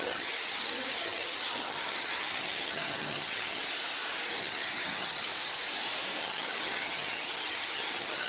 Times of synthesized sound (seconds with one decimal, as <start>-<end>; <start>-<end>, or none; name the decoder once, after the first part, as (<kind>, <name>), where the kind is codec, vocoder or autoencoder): 0.0-3.6 (vocoder, HiFi-GAN); 4.4-5.3; 6.2-8.3